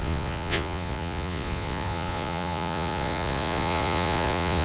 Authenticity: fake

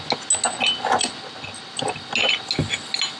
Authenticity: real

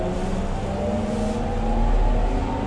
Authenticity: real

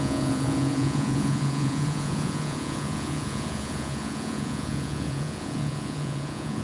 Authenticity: fake